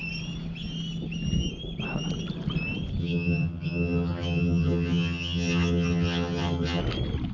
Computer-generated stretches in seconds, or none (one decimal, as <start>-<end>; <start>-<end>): 3.0-6.8